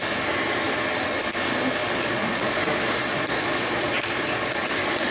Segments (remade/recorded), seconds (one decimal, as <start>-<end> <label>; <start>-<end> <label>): 0.0-1.8 recorded; 1.8-5.1 remade